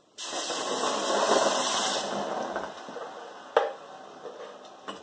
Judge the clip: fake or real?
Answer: real